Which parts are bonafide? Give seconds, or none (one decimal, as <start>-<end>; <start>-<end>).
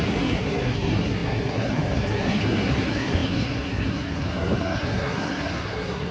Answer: none